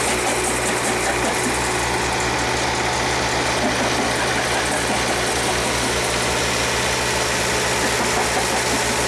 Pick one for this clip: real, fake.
real